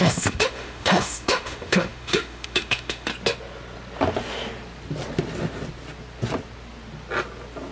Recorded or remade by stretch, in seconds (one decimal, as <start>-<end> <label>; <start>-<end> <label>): 0.0-3.1 remade; 3.1-7.7 recorded